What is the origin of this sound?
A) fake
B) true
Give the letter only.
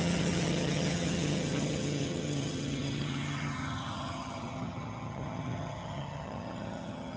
A